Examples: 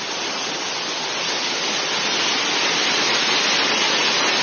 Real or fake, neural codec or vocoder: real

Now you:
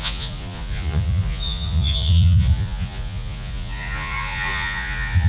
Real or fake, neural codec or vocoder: fake, vocoder, Vocos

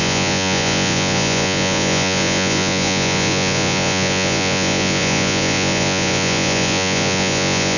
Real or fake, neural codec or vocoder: fake, vocoder, Vocos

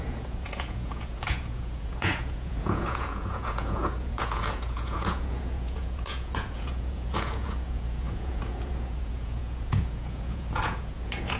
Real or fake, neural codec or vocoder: fake, vocoder, Vocos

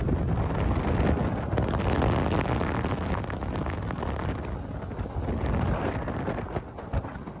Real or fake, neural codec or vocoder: real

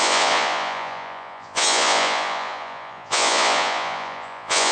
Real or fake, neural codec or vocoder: fake, vocoder, Vocos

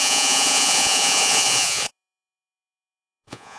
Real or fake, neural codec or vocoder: fake, vocoder, Vocos